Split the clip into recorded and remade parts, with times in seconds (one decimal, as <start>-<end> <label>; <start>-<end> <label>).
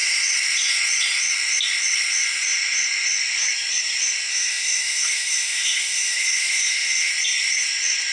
0.0-4.3 recorded; 4.3-7.1 remade; 7.1-8.1 recorded